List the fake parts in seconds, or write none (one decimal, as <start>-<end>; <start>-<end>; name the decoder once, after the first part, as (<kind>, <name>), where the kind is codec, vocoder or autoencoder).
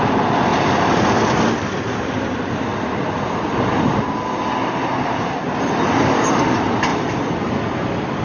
0.5-4.4 (vocoder, BigVGAN v2); 6.9-8.2